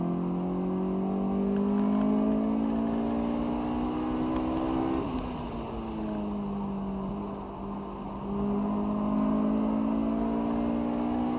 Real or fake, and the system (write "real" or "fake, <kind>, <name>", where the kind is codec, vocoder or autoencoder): real